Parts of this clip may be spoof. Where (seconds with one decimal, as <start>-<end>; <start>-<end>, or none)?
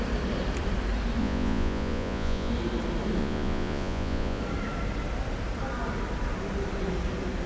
1.2-2.5; 3.2-4.4